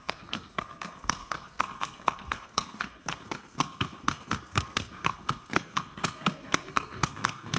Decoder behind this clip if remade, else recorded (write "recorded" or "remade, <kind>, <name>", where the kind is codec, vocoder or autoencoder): remade, codec, SNAC